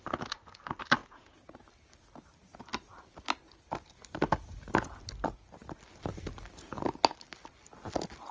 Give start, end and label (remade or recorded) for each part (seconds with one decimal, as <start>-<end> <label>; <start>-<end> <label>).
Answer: 0.0-1.0 recorded; 1.0-1.6 remade; 1.6-8.3 recorded